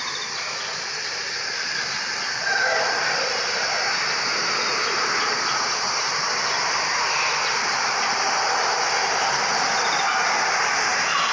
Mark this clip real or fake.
real